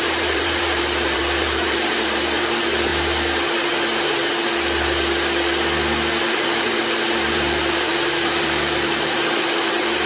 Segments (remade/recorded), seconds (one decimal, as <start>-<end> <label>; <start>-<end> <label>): 0.0-2.9 remade; 2.9-6.3 recorded; 6.3-10.1 remade